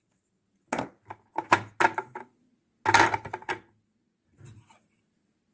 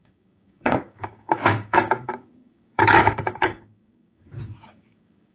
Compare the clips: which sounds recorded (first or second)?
first